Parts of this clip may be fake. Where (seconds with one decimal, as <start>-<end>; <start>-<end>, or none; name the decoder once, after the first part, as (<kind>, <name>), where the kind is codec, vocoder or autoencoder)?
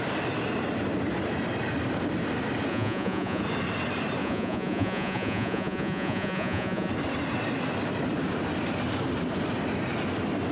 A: 2.7-3.4 (vocoder, Vocos); 4.2-6.9